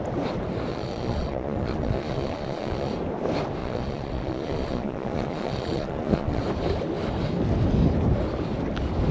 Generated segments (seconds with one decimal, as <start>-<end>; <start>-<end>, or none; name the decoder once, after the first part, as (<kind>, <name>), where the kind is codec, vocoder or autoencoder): 0.7-2.9 (vocoder, Vocos); 3.6-6.4